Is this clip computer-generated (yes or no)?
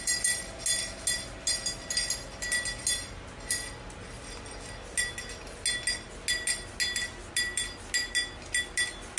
no